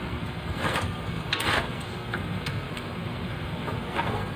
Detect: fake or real fake